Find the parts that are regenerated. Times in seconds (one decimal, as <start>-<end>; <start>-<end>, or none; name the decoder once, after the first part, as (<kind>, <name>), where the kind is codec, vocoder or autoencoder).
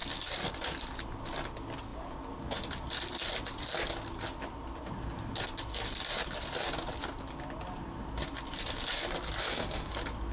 9.4-9.9 (autoencoder, DAC-VAE)